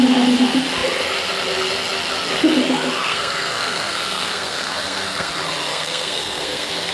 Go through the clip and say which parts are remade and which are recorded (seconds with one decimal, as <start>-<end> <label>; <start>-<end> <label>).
0.0-3.0 recorded; 3.0-5.3 remade; 5.3-5.7 recorded; 5.7-6.9 remade